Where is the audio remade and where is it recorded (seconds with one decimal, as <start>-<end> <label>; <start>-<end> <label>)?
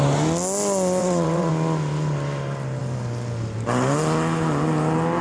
0.0-1.0 recorded; 1.0-1.5 remade; 1.5-5.2 recorded